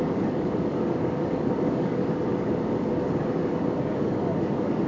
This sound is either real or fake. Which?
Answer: fake